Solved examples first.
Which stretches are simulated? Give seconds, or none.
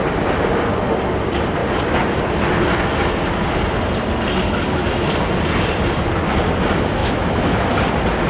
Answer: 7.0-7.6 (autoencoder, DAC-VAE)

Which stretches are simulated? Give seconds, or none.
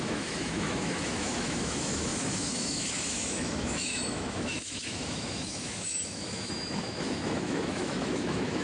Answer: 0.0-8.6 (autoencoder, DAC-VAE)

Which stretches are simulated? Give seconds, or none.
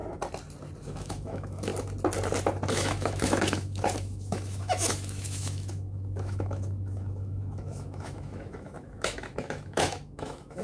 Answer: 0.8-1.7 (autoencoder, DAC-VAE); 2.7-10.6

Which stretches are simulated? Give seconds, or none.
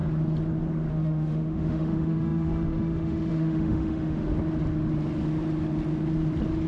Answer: 0.9-4.3 (autoencoder, DAC-VAE)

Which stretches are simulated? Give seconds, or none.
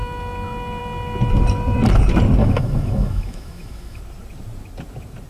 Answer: 2.4-4.0 (autoencoder, DAC-VAE)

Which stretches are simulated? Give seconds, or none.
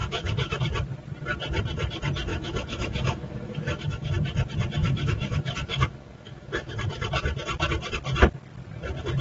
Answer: 0.0-0.6 (autoencoder, DAC-VAE); 2.3-4.1; 4.8-6.7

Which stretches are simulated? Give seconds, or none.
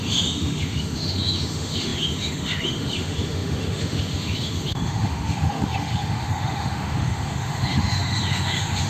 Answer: 0.0-8.9 (autoencoder, DAC-VAE)